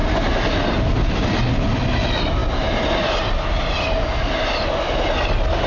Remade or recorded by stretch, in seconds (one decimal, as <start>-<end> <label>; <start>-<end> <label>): 0.0-5.7 recorded